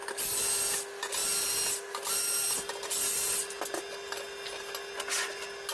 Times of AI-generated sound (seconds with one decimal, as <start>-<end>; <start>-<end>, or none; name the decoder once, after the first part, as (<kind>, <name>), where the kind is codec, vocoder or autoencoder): none

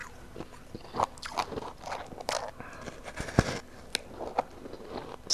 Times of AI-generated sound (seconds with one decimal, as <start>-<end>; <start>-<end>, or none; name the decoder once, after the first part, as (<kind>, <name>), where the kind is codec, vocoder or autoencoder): none